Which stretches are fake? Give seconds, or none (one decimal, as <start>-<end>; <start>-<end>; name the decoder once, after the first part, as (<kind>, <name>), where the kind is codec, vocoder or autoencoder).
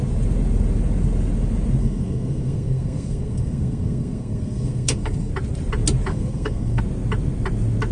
1.8-5.3 (codec, SNAC); 6.1-6.8